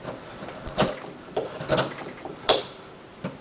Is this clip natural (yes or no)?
no